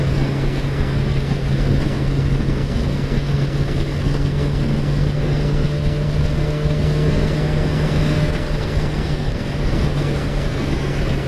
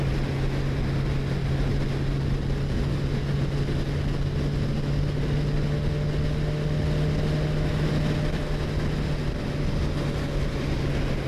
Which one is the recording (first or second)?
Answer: second